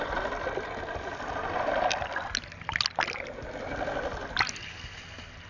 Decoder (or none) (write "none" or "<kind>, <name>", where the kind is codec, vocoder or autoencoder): none